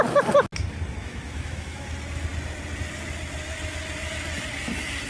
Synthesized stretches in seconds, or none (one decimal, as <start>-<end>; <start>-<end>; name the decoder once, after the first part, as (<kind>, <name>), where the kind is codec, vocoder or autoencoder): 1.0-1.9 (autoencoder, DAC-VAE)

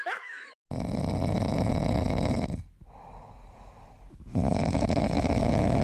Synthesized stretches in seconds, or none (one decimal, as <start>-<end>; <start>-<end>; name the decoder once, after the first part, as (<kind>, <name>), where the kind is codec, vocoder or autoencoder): 0.0-0.6 (autoencoder, DAC-VAE); 4.1-5.8

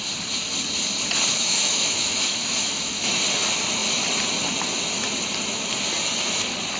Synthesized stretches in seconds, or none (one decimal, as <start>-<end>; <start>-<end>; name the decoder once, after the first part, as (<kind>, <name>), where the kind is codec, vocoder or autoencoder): 1.3-3.2 (autoencoder, DAC-VAE)

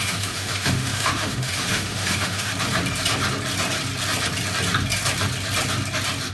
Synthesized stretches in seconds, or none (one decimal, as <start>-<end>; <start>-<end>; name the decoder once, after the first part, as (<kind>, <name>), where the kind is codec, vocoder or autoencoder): 0.0-2.5 (autoencoder, DAC-VAE)

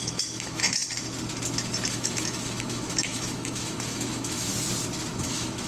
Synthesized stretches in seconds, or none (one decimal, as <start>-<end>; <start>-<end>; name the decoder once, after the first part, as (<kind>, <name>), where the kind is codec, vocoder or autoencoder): 0.0-0.8 (autoencoder, DAC-VAE); 1.9-4.5; 5.2-5.7

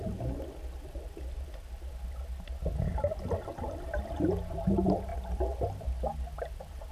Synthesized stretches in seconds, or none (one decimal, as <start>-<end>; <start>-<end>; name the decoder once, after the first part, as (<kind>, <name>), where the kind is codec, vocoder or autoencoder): none